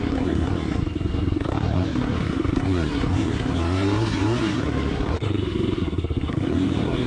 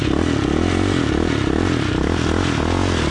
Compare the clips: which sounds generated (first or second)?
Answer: first